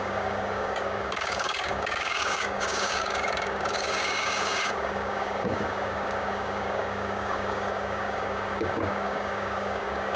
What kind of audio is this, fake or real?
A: fake